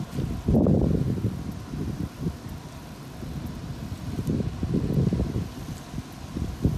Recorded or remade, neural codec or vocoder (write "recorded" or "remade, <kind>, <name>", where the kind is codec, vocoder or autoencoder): recorded